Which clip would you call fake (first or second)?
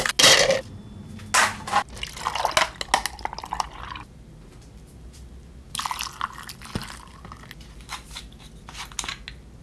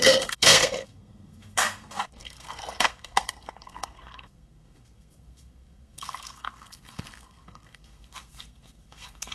second